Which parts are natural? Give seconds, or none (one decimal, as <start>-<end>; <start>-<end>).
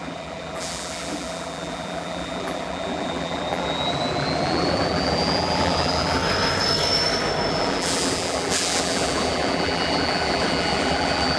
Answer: 6.2-7.5